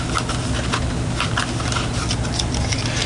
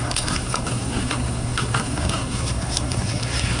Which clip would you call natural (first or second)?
first